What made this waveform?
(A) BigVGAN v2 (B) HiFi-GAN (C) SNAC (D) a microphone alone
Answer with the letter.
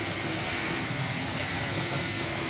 C